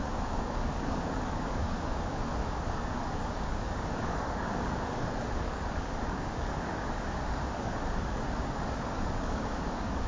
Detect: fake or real fake